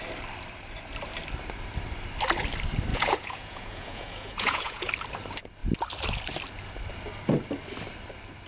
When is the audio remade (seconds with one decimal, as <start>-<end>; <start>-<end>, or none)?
2.9-4.9